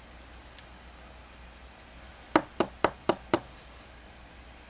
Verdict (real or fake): real